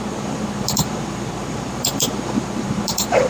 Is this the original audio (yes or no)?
no